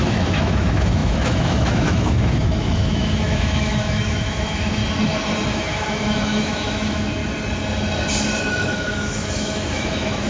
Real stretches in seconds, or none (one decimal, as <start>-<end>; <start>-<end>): 4.8-5.5; 7.2-8.4